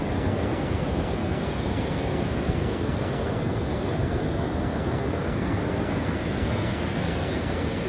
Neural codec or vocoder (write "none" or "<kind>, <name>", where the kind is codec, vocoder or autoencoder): codec, SNAC